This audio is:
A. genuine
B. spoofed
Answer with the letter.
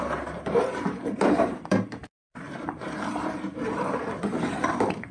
B